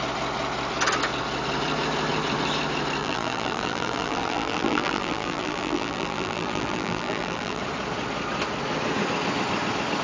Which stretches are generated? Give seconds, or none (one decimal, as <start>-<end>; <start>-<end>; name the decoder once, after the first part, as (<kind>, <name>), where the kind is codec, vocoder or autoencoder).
3.0-7.6 (vocoder, BigVGAN v2)